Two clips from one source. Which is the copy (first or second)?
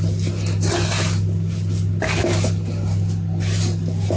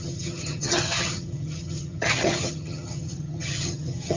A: second